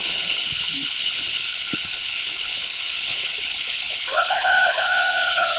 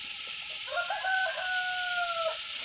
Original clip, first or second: second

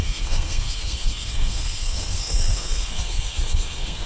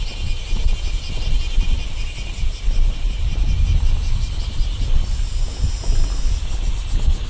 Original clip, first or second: second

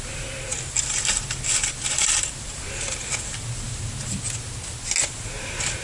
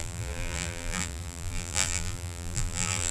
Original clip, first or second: first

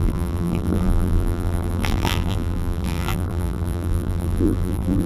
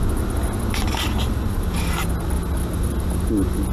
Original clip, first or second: second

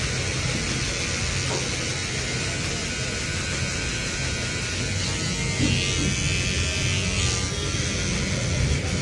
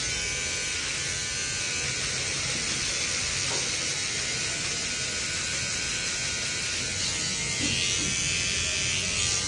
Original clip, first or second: first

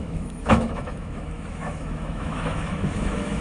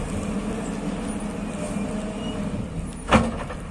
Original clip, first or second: second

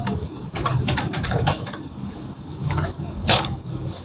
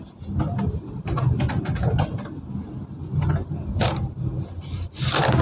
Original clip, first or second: second